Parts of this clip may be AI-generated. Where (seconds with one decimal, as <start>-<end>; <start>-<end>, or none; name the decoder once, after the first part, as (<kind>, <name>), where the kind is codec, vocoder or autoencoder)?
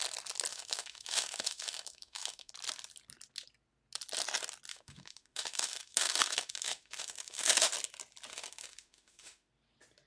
0.5-2.5 (autoencoder, DAC-VAE); 4.7-7.7; 8.3-9.5